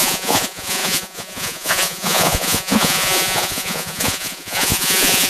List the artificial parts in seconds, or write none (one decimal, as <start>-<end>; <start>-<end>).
0.0-5.3